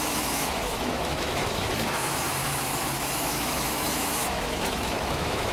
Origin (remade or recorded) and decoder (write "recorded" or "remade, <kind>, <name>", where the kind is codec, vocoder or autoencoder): remade, autoencoder, DAC-VAE